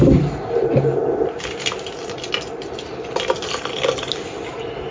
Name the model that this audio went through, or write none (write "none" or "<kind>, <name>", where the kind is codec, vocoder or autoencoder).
none